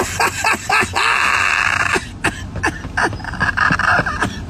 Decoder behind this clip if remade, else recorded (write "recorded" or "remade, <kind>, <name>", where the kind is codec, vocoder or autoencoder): recorded